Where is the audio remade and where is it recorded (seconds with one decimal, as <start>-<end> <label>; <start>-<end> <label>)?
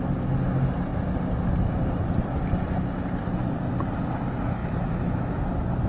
0.0-5.9 recorded